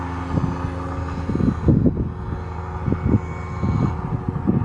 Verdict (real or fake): real